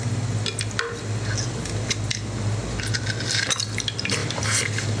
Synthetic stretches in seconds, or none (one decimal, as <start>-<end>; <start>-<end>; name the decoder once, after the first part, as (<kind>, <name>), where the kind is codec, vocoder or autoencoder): none

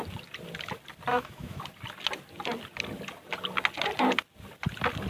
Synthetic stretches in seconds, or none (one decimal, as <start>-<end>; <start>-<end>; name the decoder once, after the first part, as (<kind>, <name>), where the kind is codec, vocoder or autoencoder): 1.1-1.6 (autoencoder, DAC-VAE)

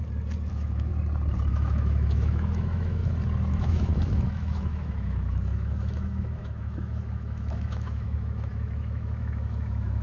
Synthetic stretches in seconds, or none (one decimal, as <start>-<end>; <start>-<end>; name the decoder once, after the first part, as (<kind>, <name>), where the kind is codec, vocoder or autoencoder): 0.5-0.9 (autoencoder, DAC-VAE); 1.5-3.0; 3.5-10.0

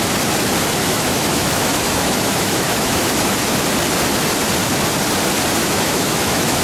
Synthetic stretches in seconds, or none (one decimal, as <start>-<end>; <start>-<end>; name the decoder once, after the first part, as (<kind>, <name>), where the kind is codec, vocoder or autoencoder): 0.8-3.3 (autoencoder, DAC-VAE); 5.6-6.6